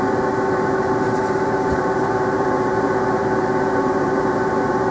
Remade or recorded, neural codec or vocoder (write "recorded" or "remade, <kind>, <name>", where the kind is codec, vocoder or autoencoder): remade, vocoder, BigVGAN v2